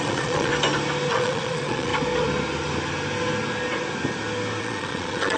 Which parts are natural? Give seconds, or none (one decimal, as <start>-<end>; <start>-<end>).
0.5-1.1; 1.9-4.6